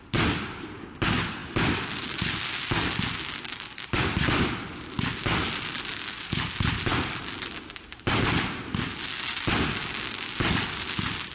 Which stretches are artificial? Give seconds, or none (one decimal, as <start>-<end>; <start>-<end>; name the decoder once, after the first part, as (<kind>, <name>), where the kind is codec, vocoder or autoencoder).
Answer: none